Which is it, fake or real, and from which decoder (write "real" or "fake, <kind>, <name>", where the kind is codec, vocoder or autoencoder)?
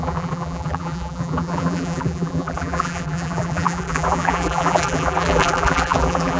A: fake, vocoder, BigVGAN v2